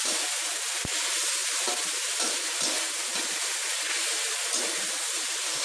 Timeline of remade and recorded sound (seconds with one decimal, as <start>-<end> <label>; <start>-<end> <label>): 0.0-5.6 recorded